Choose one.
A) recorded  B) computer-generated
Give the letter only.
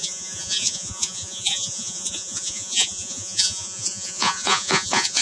B